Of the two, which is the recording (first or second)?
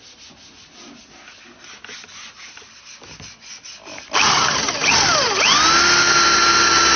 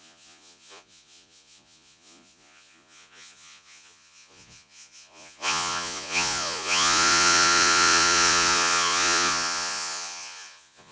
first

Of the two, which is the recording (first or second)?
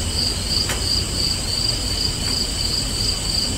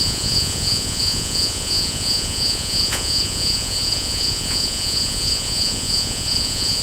first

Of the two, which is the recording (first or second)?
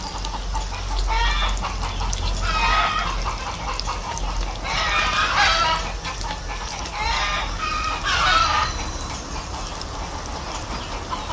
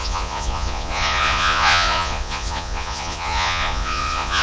first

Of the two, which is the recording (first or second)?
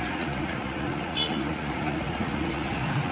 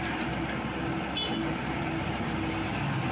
second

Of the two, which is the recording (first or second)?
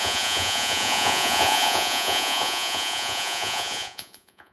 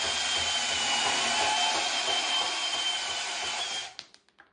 second